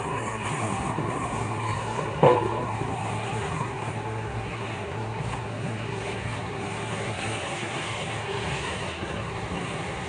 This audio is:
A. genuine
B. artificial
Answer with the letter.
B